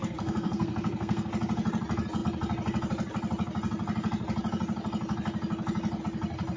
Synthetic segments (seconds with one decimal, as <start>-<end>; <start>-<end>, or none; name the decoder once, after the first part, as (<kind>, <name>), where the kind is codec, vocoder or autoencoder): 0.0-1.3 (codec, SNAC)